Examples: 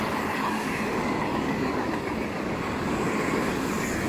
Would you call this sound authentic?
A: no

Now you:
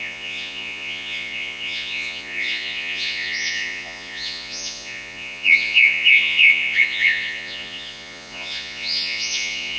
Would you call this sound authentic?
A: no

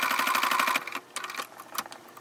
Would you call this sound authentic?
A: yes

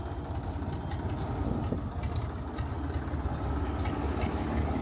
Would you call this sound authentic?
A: yes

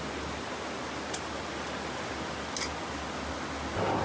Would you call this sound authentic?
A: yes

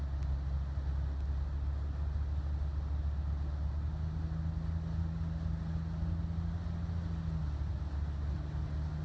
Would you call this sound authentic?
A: yes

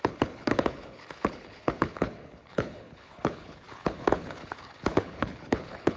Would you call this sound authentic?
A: no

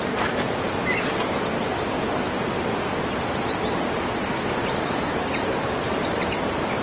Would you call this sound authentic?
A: no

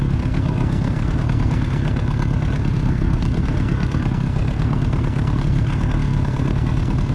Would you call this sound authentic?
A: no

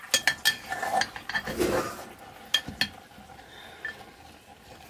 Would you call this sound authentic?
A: yes